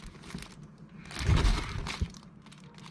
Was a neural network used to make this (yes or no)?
no